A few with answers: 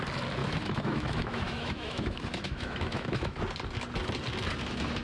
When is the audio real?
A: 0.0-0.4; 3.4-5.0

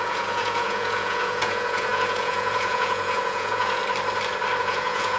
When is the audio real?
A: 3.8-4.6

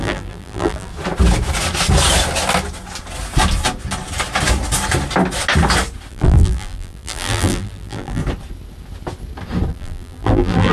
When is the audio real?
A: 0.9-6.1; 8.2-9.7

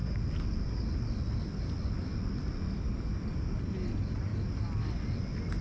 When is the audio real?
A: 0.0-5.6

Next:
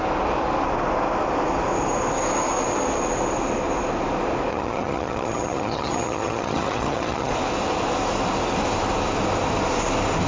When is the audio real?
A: 0.0-4.5; 7.3-10.3

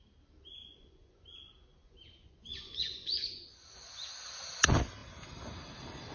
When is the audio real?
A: 0.0-0.6; 4.3-6.1

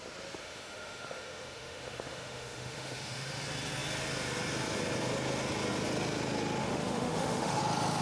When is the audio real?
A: 0.0-0.4; 3.4-6.6; 7.6-8.0

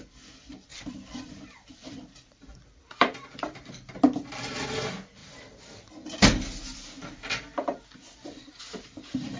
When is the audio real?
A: 0.0-0.7; 3.9-5.2; 8.8-9.4